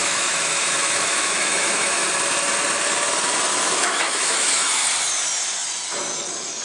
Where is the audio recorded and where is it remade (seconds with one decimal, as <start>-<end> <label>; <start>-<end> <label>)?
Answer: 0.0-2.0 remade; 2.0-3.5 recorded; 3.5-4.7 remade; 4.7-6.6 recorded